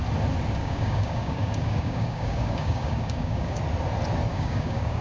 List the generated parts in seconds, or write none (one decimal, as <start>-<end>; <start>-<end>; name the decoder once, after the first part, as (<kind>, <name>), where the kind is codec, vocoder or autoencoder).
0.6-3.6 (codec, DAC); 4.3-5.0